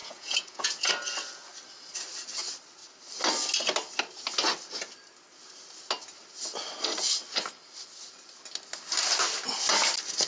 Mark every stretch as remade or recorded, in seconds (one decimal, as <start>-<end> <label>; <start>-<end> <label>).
0.0-0.9 remade; 0.9-10.3 recorded